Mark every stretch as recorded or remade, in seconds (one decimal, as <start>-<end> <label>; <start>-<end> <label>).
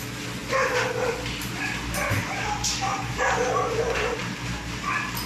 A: 0.0-5.3 recorded